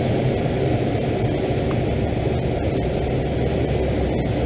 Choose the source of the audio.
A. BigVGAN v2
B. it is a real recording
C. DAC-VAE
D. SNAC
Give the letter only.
B